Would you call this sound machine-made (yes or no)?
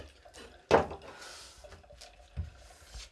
no